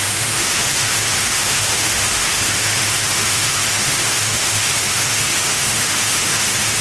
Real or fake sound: fake